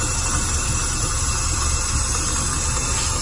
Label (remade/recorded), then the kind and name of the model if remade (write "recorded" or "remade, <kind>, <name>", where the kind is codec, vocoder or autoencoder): recorded